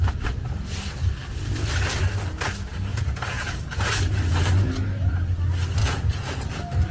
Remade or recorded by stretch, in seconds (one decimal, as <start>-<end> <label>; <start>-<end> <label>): 0.0-2.9 recorded; 2.9-3.9 remade; 3.9-5.8 recorded; 5.8-6.5 remade; 6.5-6.9 recorded